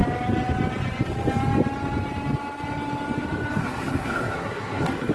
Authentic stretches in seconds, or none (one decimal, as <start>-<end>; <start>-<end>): 0.0-3.6

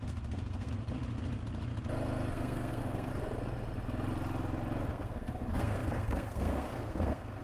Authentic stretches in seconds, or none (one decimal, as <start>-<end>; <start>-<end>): 0.7-2.3; 3.1-4.9

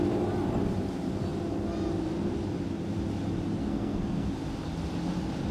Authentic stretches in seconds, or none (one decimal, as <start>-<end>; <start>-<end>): 0.0-3.6; 4.3-5.5

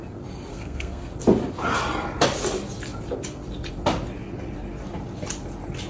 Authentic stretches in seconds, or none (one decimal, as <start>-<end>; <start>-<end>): 0.0-0.5; 1.1-5.9